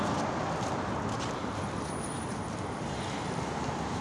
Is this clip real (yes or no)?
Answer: yes